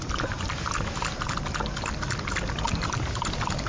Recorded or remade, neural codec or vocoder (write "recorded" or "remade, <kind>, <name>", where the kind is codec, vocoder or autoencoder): recorded